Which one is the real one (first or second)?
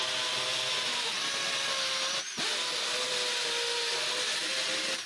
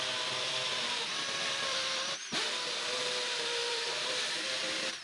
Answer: first